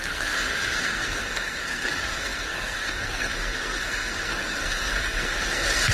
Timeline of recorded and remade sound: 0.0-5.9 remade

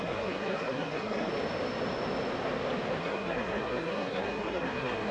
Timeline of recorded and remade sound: 0.0-1.3 remade; 1.3-3.0 recorded; 3.0-5.1 remade

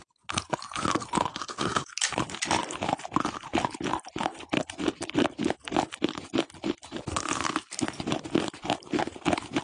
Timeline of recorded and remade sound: 0.0-1.3 recorded; 1.3-1.9 remade; 1.9-9.6 recorded

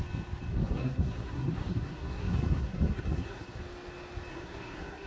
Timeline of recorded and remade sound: 0.0-0.5 recorded; 0.5-3.6 remade; 3.6-4.3 recorded; 4.3-5.1 remade

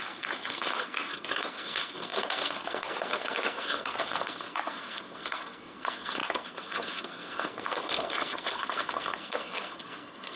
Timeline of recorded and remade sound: 0.0-10.4 remade

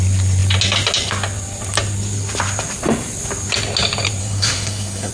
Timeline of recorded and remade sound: 0.0-4.2 recorded; 4.2-5.1 remade

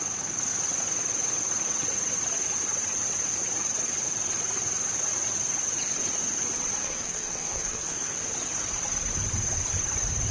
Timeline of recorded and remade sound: 0.0-6.8 recorded; 6.8-8.2 remade; 8.2-10.3 recorded